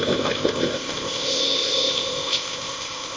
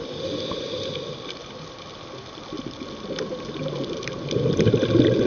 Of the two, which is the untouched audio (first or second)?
second